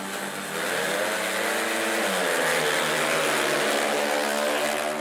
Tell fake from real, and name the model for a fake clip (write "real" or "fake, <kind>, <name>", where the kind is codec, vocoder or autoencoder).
real